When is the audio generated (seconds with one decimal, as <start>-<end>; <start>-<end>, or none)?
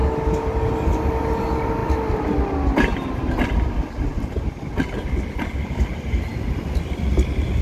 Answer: none